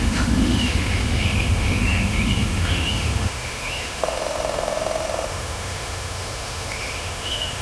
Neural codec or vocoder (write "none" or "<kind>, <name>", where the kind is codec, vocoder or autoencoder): autoencoder, DAC-VAE